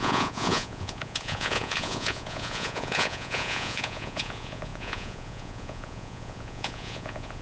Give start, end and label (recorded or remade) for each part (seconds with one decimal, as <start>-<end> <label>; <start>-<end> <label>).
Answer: 0.0-7.4 remade